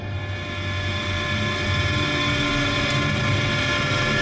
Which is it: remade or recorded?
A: recorded